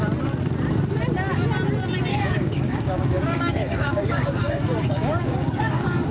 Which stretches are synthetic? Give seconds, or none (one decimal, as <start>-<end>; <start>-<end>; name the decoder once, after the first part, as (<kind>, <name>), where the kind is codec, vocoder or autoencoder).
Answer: 2.1-6.1 (codec, DAC)